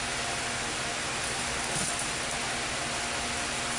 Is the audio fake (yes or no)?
no